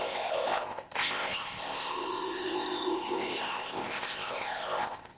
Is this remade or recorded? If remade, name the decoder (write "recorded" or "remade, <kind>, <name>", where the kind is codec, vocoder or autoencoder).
remade, codec, ZipCodec